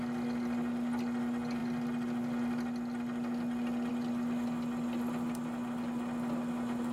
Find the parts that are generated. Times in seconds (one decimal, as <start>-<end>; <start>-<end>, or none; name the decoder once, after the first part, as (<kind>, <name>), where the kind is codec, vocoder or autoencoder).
none